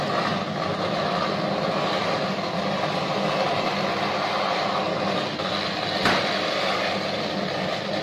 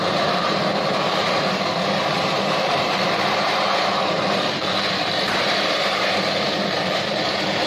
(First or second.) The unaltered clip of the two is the first